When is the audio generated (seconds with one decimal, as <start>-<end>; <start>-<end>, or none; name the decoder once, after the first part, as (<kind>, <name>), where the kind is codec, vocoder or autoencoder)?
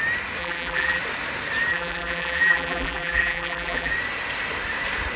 0.4-1.0 (vocoder, BigVGAN v2); 1.7-3.9